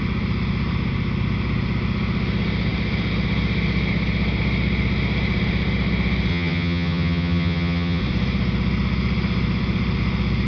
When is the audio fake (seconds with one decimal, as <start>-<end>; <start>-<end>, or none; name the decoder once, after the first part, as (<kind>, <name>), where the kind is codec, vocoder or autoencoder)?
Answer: 6.3-8.0 (vocoder, HiFi-GAN)